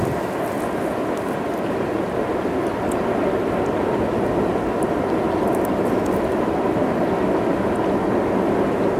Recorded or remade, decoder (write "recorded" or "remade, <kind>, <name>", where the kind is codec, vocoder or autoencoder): recorded